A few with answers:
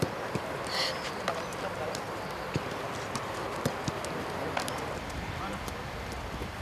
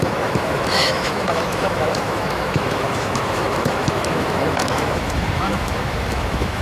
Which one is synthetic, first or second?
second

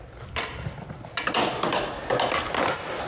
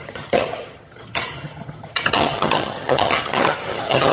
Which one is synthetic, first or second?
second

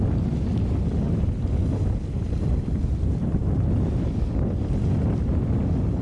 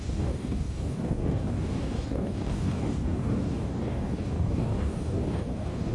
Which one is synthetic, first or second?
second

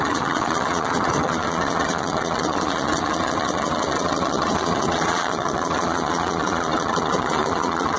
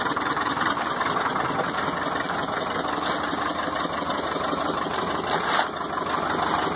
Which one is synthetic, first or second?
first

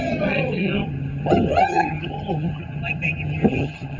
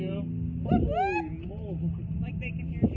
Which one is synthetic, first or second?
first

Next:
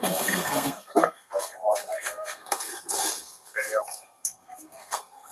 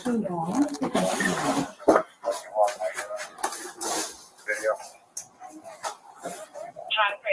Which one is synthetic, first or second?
first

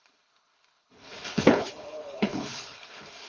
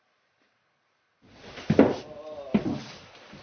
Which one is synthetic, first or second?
first